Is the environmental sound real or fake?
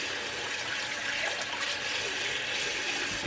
real